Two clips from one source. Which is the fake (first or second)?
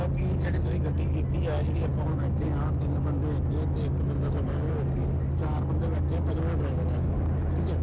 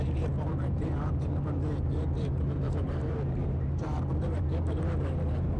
second